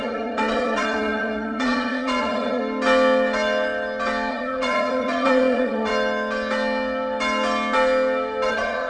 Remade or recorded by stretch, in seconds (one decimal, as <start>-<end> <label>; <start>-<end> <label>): 0.0-2.6 remade; 2.6-4.3 recorded; 4.3-5.9 remade; 5.9-8.5 recorded; 8.5-8.9 remade